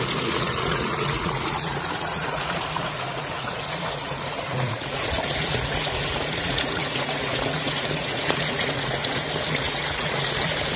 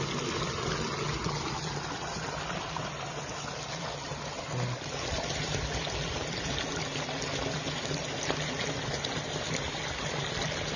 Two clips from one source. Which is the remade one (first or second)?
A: first